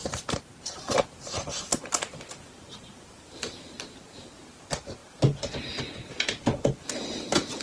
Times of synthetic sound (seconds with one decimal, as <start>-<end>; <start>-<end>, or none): 0.0-4.5